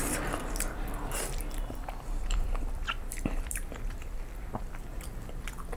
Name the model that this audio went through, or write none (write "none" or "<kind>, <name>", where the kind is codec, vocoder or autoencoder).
vocoder, BigVGAN v2